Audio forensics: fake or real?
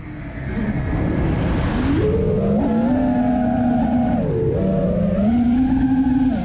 real